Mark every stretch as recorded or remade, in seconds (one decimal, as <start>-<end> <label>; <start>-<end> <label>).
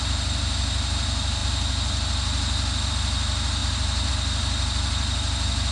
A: 0.0-3.6 recorded; 3.6-4.1 remade; 4.1-5.7 recorded